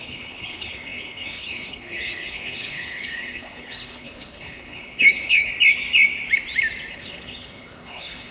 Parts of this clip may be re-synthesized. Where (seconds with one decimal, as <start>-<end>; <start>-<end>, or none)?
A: 0.0-5.5; 6.9-8.3